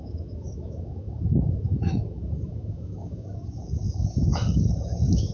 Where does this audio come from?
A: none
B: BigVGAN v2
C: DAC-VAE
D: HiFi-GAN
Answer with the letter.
C